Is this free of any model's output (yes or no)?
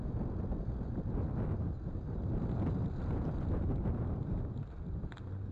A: yes